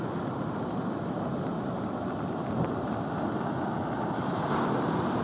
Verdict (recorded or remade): recorded